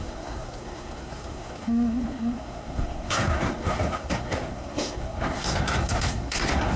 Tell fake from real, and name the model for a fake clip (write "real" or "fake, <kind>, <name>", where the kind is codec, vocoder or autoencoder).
fake, codec, SNAC